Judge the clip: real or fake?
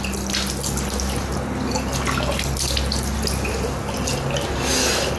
real